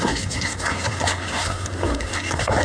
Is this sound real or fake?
fake